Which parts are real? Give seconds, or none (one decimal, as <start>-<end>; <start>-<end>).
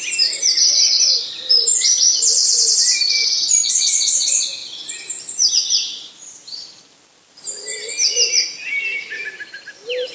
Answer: none